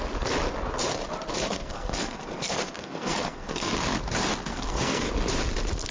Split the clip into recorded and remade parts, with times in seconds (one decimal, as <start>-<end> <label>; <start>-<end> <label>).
0.0-1.5 recorded; 1.5-3.7 remade; 3.7-4.5 recorded; 4.5-5.1 remade; 5.1-5.9 recorded